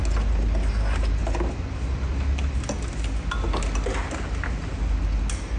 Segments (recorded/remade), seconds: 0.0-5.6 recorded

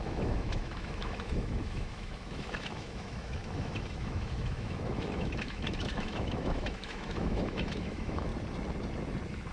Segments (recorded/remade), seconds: 0.0-8.3 remade; 8.3-9.5 recorded

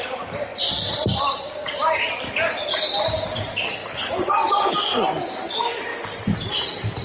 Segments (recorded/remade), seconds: 0.0-3.8 remade; 3.8-5.5 recorded; 5.5-5.9 remade; 5.9-6.5 recorded; 6.5-7.0 remade

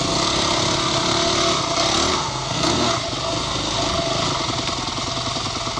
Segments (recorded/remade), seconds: 0.0-2.1 recorded; 2.1-2.9 remade; 2.9-5.8 recorded

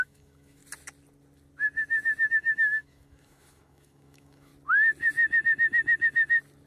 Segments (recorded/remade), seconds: 0.0-0.6 remade; 0.6-2.3 recorded; 2.3-4.5 remade; 4.5-6.7 recorded

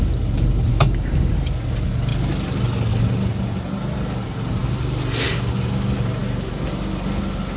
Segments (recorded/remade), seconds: 0.0-0.7 recorded; 0.7-1.3 remade; 1.3-7.6 recorded

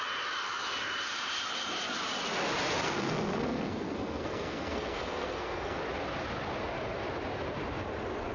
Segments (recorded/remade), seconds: 0.0-2.8 recorded; 2.8-5.8 remade; 5.8-8.3 recorded